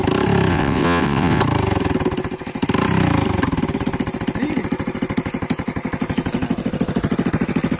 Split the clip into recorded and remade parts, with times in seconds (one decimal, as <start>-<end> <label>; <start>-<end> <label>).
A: 0.0-0.5 recorded; 0.5-1.4 remade; 1.4-7.8 recorded